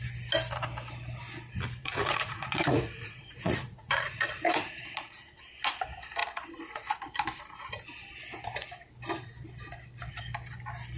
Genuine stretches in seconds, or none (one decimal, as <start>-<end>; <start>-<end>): 0.0-1.8; 5.4-11.0